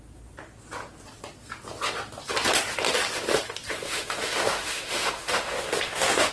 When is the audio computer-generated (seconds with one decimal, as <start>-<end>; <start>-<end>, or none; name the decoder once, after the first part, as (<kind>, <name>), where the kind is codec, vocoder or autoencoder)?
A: 3.8-6.3 (autoencoder, DAC-VAE)